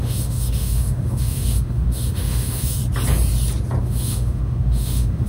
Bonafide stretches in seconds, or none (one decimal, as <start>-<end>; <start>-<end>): 2.8-3.8